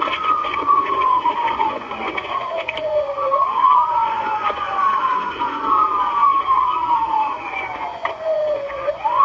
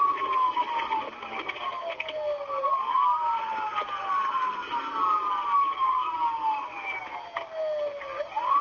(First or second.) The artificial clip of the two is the first